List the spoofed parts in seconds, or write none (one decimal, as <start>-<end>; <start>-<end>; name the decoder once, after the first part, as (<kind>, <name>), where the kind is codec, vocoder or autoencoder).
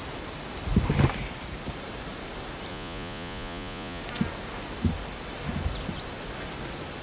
2.7-4.0 (vocoder, Vocos)